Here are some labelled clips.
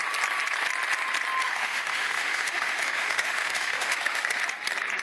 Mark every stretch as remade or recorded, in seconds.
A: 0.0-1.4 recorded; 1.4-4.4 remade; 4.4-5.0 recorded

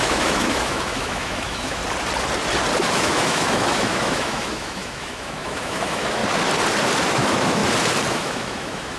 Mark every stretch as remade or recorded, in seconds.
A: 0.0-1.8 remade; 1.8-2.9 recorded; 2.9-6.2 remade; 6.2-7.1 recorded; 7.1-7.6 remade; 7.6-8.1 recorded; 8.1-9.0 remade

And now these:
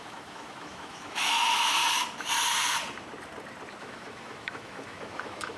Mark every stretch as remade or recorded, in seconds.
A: 0.0-1.8 remade; 1.8-3.8 recorded; 3.8-5.6 remade

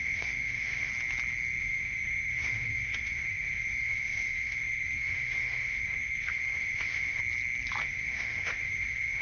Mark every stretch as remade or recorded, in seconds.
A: 0.0-0.9 remade; 0.9-1.6 recorded; 1.6-7.2 remade; 7.2-7.8 recorded; 7.8-9.2 remade

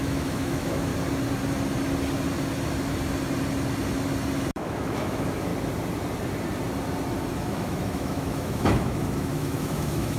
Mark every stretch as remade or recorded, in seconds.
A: 0.0-0.9 remade; 0.9-4.5 recorded; 4.5-5.5 remade; 5.5-7.3 recorded; 7.3-10.2 remade

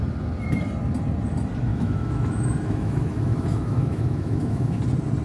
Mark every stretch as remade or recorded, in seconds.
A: 0.0-1.7 recorded; 1.7-4.8 remade; 4.8-5.2 recorded

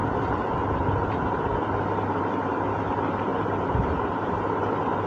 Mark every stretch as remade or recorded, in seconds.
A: 0.0-5.1 recorded

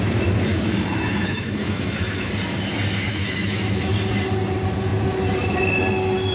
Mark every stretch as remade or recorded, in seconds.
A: 0.0-0.5 recorded; 0.5-2.3 remade; 2.3-3.1 recorded; 3.1-3.9 remade; 3.9-6.3 recorded